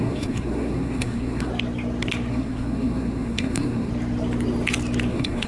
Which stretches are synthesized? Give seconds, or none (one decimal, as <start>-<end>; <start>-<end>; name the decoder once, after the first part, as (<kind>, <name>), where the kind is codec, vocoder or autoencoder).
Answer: 0.0-1.5 (codec, SNAC); 2.3-3.9; 5.1-5.5